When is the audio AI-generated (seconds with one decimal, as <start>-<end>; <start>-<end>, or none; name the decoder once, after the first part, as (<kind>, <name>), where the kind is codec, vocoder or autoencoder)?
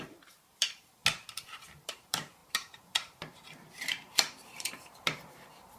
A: 0.0-1.0 (vocoder, BigVGAN v2); 1.6-5.8